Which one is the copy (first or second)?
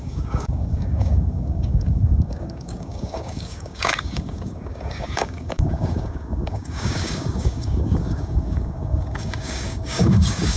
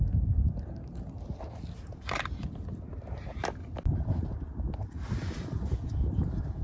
first